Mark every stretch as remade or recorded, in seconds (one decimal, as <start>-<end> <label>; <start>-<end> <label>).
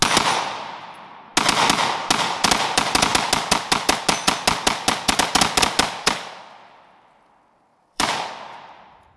0.0-7.7 recorded; 7.7-8.3 remade; 8.3-9.2 recorded